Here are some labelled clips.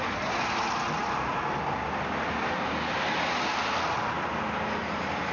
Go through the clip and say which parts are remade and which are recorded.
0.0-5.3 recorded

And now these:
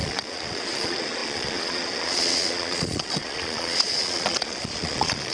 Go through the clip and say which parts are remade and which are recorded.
0.0-5.3 remade